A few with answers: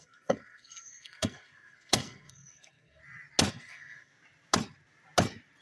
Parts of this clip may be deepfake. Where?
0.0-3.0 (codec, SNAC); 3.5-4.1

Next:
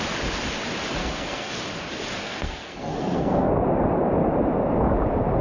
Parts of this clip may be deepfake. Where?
1.0-1.5 (codec, SNAC); 2.2-3.5

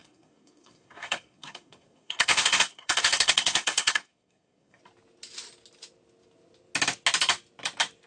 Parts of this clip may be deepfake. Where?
0.0-4.8 (codec, SNAC)

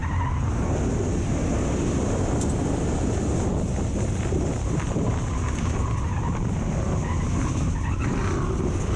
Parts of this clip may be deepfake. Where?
none

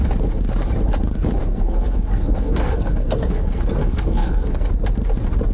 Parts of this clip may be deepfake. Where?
1.4-4.7 (codec, SNAC)

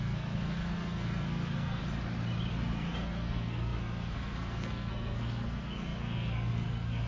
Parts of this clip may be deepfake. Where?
0.0-1.8 (codec, SNAC); 2.5-7.1

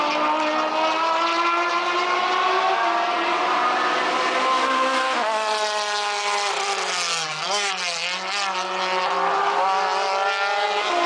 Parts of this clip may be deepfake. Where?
7.1-7.7 (codec, SNAC)